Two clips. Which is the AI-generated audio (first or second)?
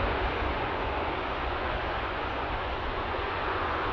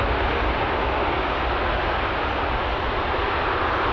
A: first